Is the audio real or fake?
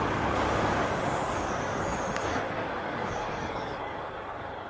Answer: fake